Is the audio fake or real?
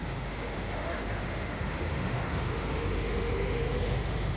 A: fake